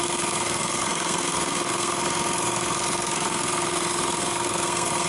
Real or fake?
fake